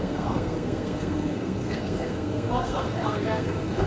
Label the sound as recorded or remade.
remade